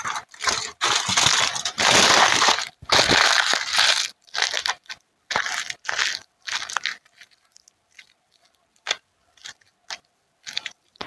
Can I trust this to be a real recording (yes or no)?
yes